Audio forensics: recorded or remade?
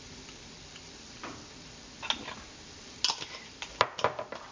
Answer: recorded